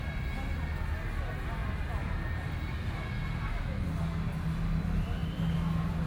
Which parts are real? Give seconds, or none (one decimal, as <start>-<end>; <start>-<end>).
0.0-6.1